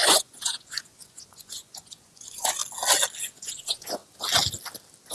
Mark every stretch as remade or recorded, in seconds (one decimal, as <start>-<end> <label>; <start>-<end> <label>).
0.0-2.6 remade; 2.6-3.2 recorded; 3.2-4.0 remade; 4.0-5.1 recorded